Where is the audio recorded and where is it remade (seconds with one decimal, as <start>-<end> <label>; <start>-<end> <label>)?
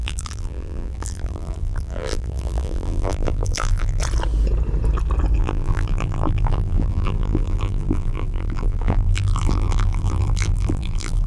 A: 0.0-4.0 remade; 4.0-5.4 recorded; 5.4-11.3 remade